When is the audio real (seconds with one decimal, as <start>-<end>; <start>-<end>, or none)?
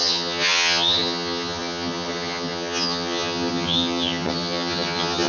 none